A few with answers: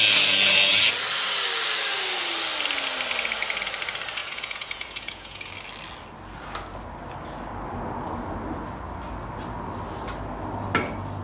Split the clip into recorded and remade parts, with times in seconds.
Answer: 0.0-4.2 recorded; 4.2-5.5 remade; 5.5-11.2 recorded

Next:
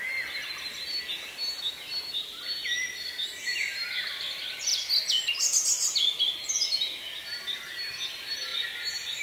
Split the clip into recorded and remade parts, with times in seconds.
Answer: 0.0-9.2 recorded

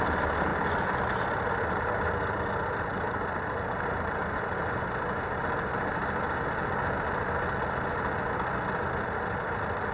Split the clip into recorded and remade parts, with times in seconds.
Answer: 0.0-9.9 recorded

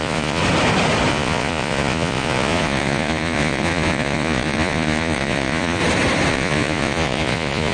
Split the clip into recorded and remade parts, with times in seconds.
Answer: 0.0-0.4 remade; 0.4-1.1 recorded; 1.1-5.8 remade; 5.8-6.3 recorded; 6.3-7.7 remade